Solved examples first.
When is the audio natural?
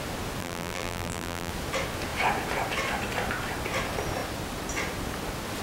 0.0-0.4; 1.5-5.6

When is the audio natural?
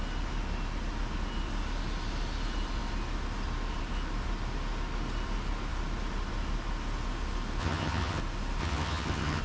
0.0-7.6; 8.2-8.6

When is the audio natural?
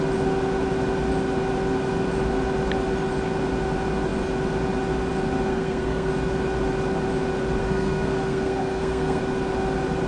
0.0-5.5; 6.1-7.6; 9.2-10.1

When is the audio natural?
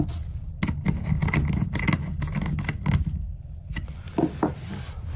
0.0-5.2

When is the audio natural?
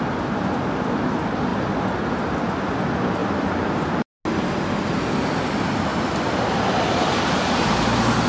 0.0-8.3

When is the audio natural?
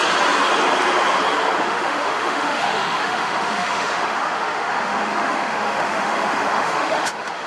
0.0-1.6